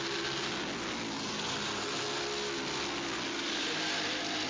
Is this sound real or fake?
real